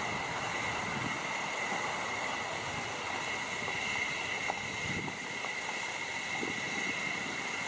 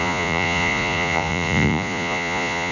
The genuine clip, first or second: first